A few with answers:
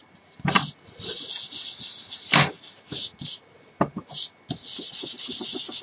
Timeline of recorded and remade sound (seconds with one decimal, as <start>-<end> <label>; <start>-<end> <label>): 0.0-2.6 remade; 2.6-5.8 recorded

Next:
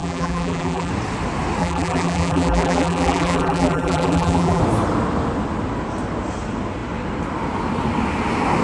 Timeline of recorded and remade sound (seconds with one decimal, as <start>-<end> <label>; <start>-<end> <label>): 0.0-0.9 remade; 0.9-1.6 recorded; 1.6-4.6 remade; 4.6-8.6 recorded

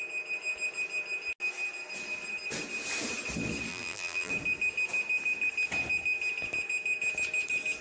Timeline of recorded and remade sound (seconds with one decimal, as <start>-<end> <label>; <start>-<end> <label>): 0.0-3.7 recorded; 3.7-4.3 remade; 4.3-7.8 recorded

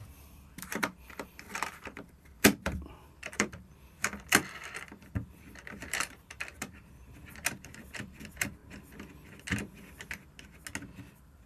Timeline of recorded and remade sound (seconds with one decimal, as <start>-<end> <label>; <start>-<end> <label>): 0.0-8.6 remade; 8.6-10.8 recorded; 10.8-11.5 remade